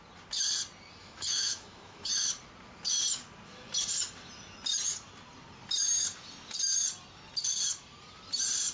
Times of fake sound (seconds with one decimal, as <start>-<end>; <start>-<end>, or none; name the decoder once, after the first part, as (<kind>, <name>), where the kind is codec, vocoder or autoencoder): 1.0-2.3 (autoencoder, DAC-VAE)